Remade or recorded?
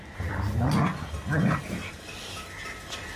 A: recorded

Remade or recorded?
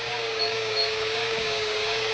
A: remade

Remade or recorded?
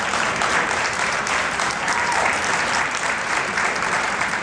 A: remade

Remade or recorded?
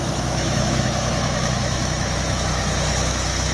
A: remade